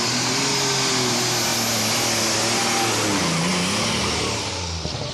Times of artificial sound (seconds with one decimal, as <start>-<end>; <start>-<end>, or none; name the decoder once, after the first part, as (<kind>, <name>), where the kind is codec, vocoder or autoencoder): none